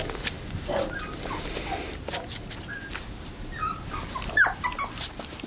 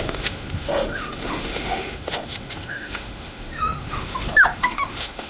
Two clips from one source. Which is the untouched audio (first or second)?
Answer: first